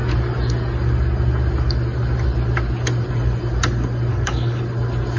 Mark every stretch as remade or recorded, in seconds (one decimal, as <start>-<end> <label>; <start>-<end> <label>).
0.0-4.1 recorded; 4.1-4.6 remade; 4.6-5.2 recorded